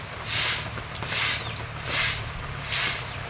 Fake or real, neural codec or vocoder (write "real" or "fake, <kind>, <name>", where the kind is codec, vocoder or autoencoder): real